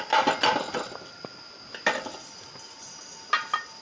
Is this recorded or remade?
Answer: recorded